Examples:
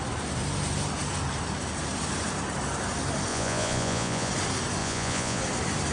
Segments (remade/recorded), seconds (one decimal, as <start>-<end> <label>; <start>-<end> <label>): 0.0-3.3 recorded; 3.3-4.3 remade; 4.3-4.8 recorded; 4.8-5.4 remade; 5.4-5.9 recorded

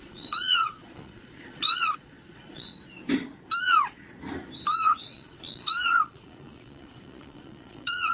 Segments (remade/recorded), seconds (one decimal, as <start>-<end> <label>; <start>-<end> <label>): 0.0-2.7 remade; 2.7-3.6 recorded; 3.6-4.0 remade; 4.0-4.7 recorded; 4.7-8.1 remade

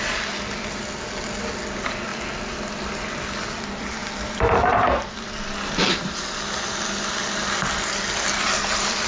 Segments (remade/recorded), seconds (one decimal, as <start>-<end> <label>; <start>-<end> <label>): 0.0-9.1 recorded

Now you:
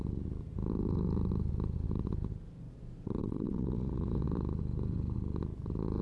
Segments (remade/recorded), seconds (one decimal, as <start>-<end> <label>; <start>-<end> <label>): 0.0-3.2 recorded; 3.2-4.2 remade; 4.2-6.0 recorded

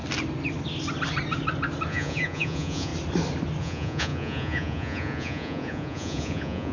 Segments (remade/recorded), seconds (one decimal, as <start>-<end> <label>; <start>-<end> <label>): 0.0-1.9 recorded; 1.9-2.9 remade; 2.9-3.6 recorded; 3.6-6.7 remade